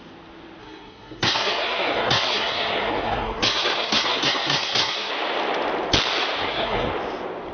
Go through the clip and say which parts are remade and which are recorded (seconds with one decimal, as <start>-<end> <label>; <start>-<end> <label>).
0.0-0.6 recorded; 0.6-5.1 remade; 5.1-6.4 recorded; 6.4-6.9 remade; 6.9-7.5 recorded